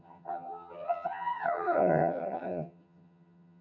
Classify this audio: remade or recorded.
remade